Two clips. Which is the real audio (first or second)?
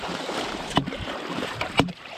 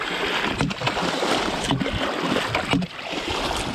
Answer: second